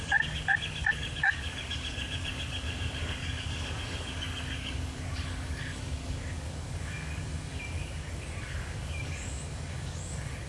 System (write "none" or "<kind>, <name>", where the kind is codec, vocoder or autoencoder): codec, DAC